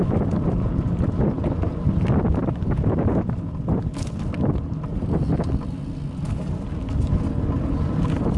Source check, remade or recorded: recorded